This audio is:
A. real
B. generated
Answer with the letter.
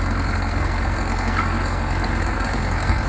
B